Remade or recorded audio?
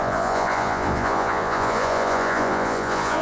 remade